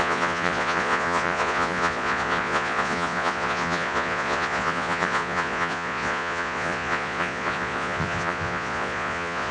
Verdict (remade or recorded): remade